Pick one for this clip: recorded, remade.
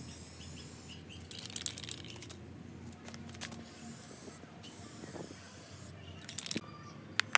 recorded